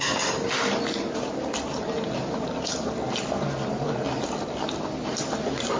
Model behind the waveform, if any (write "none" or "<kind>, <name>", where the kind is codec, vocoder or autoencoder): none